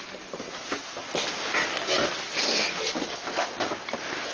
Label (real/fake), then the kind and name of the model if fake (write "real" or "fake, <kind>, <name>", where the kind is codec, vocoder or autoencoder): real